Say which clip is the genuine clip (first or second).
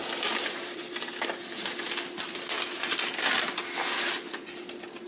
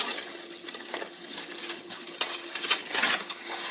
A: first